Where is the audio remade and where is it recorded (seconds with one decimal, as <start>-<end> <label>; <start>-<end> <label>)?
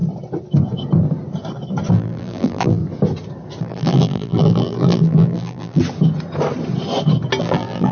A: 0.0-1.9 recorded; 1.9-2.8 remade; 2.8-3.6 recorded; 3.6-5.8 remade; 5.8-7.4 recorded; 7.4-7.9 remade